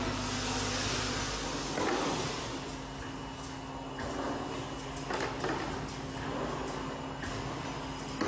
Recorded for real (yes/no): yes